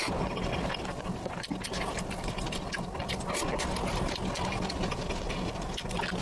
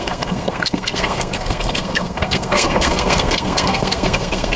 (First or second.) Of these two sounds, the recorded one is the first